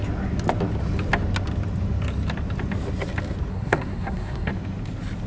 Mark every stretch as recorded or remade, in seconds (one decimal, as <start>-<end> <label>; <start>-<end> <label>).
0.0-3.5 recorded; 3.5-4.5 remade; 4.5-5.3 recorded